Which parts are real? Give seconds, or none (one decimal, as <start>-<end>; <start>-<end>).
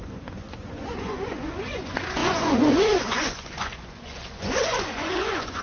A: none